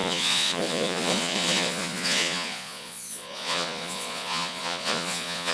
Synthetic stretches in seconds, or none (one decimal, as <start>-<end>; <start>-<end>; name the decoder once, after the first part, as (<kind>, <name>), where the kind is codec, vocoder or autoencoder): 0.0-5.5 (vocoder, Vocos)

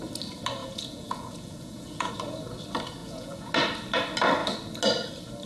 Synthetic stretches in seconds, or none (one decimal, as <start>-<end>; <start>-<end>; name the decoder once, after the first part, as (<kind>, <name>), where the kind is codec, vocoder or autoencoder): 0.6-2.1 (vocoder, Vocos); 3.0-3.5